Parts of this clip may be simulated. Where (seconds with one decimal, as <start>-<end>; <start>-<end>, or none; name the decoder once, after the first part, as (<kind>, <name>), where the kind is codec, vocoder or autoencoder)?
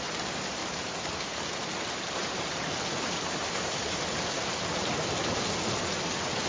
0.6-1.3 (vocoder, BigVGAN v2); 2.9-4.0